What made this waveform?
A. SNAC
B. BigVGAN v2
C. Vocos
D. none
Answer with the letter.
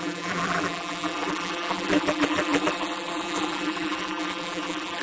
B